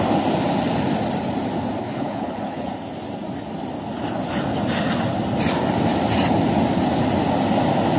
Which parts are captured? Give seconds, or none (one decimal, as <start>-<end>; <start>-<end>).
0.0-1.8; 2.7-8.0